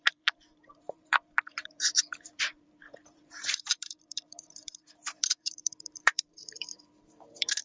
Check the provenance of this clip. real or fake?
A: fake